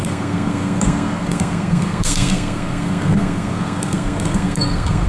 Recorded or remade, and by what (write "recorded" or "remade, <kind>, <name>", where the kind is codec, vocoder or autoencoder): remade, codec, SNAC